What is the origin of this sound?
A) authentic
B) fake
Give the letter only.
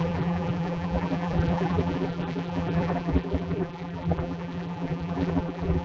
B